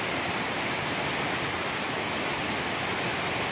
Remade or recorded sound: recorded